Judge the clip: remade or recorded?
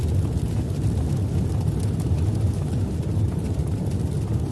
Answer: recorded